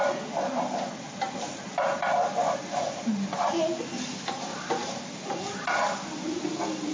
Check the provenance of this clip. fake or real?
real